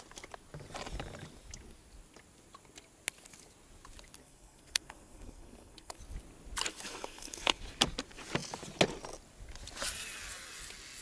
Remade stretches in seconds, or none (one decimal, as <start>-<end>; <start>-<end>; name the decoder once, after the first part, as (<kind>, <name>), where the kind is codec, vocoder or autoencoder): 4.2-6.0 (codec, SNAC); 6.7-7.6